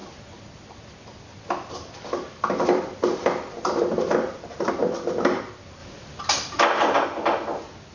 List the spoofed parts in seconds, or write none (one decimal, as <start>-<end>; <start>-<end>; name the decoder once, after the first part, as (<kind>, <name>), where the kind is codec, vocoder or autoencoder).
0.0-4.7 (vocoder, BigVGAN v2)